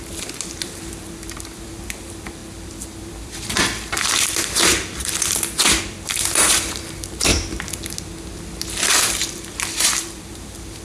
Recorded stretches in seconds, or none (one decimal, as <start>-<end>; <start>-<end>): 7.3-8.9